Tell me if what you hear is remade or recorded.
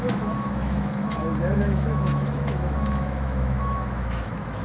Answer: remade